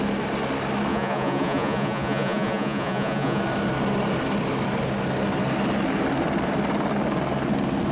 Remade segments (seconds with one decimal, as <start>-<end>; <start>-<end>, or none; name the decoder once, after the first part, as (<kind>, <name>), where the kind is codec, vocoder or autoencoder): 0.9-3.4 (vocoder, Vocos)